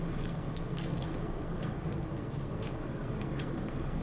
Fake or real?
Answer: fake